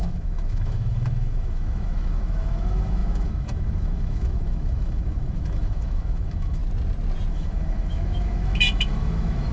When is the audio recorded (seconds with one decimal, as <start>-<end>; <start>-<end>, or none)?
6.6-7.3